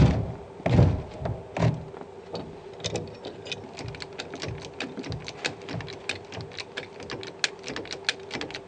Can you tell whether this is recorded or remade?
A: recorded